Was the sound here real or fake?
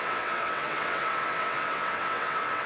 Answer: fake